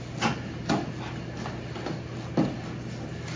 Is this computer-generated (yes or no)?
no